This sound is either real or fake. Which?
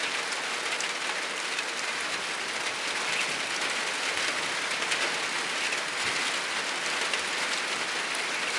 real